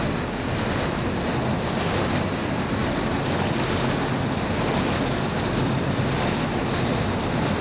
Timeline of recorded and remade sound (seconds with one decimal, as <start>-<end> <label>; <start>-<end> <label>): 0.0-7.6 recorded